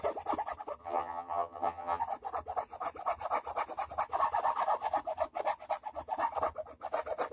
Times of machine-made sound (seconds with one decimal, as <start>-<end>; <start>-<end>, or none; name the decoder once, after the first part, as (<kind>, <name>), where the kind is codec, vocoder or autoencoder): 0.8-2.0 (vocoder, HiFi-GAN)